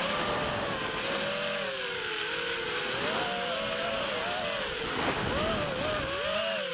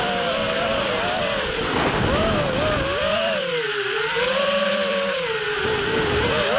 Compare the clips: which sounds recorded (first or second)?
first